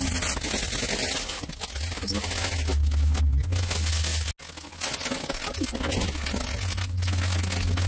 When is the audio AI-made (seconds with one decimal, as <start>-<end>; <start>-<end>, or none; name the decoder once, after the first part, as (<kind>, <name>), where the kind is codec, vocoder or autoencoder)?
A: none